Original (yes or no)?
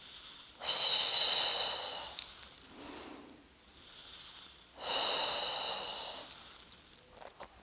yes